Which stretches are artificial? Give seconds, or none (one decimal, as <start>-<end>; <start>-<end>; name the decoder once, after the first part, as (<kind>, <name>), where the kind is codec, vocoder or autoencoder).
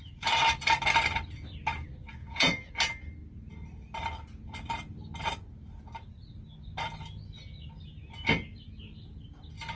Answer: 2.2-2.7 (vocoder, Vocos)